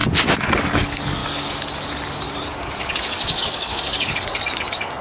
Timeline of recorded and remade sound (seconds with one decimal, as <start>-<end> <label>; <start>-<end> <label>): 0.0-0.6 recorded; 0.6-1.2 remade; 1.2-2.5 recorded; 2.5-5.0 remade